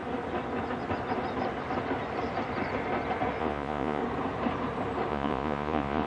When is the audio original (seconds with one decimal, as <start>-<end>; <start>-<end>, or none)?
0.0-3.4; 4.0-5.1